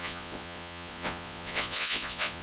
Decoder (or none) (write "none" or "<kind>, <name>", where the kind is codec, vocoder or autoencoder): vocoder, Vocos